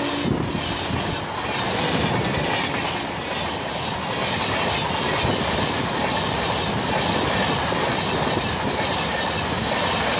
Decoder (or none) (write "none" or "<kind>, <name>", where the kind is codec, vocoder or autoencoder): none